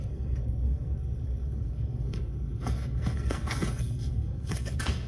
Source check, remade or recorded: remade